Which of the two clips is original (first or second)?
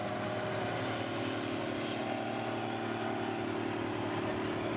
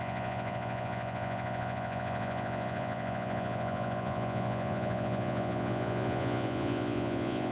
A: first